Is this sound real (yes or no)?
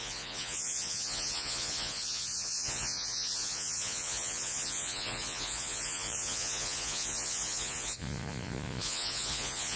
no